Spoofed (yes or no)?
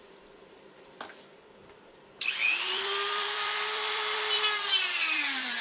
yes